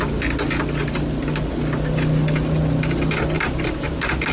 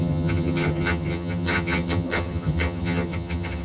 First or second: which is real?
first